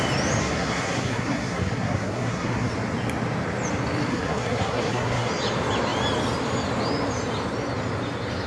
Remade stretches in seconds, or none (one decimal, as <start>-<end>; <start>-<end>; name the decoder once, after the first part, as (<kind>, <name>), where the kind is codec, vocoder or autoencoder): 0.4-2.7 (codec, SNAC); 4.1-5.3